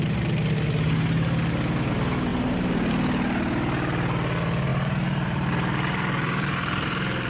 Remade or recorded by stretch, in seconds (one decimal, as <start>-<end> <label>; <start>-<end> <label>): 0.0-2.3 recorded; 2.3-2.9 remade; 2.9-4.7 recorded; 4.7-7.3 remade